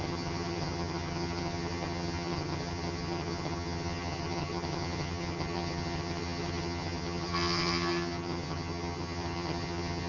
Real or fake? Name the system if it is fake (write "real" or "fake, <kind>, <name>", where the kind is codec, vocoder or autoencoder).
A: fake, vocoder, HiFi-GAN